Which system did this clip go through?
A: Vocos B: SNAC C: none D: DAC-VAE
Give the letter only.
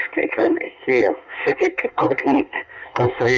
B